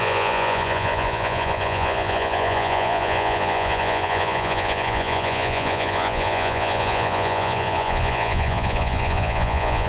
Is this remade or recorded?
remade